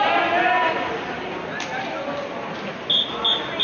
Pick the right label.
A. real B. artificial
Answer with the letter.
A